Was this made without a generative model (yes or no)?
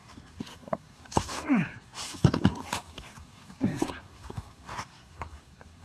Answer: no